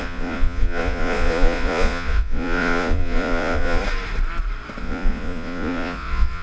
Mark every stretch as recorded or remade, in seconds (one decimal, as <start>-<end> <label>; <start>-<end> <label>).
0.0-3.8 remade; 3.8-4.8 recorded; 4.8-6.4 remade